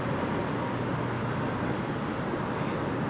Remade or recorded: recorded